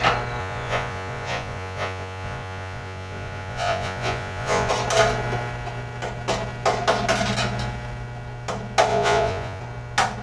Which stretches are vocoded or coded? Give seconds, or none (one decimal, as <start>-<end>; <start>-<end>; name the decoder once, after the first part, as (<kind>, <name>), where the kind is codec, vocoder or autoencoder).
0.4-4.7 (vocoder, Vocos); 8.9-9.6